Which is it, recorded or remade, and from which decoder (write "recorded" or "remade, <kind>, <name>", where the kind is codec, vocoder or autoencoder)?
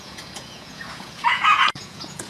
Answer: remade, vocoder, Vocos